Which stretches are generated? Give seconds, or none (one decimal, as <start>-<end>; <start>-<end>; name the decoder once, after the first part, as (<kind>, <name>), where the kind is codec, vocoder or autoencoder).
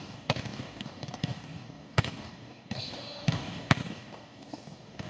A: 0.0-5.1 (codec, DAC)